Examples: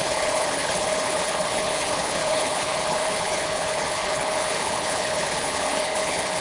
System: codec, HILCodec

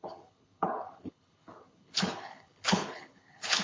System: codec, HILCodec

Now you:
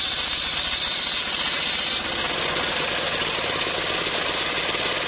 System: none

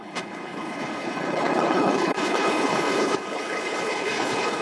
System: codec, HILCodec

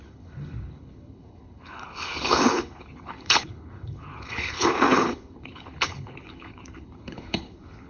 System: codec, HILCodec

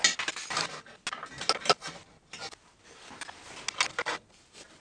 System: none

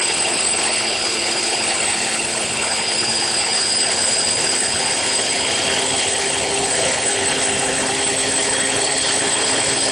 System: codec, HILCodec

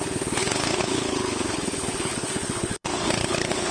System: codec, HILCodec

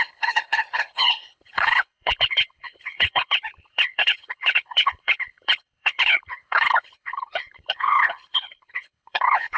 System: codec, HILCodec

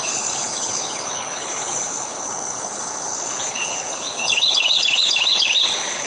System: codec, HILCodec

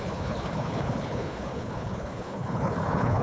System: codec, HILCodec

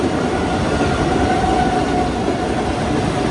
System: none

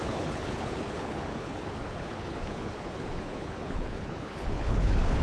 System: codec, HILCodec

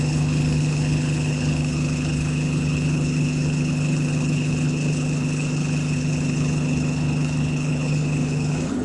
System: codec, HILCodec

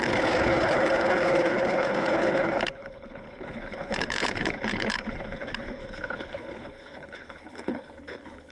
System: codec, HILCodec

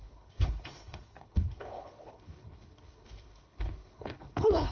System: codec, HILCodec